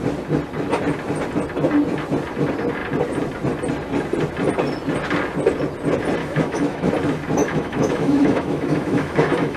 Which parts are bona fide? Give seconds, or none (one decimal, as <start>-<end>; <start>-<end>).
0.0-6.2; 6.9-7.4